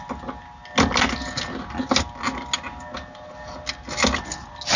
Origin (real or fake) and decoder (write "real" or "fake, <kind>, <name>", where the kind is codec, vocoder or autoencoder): real